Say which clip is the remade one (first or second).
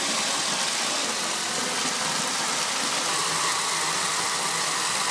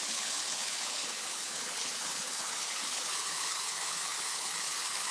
second